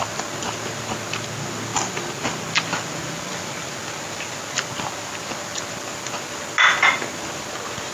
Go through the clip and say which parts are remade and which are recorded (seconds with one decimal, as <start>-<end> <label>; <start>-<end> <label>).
0.0-7.9 recorded